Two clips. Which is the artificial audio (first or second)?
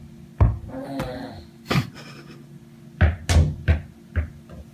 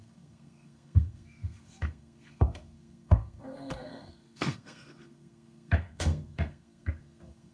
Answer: second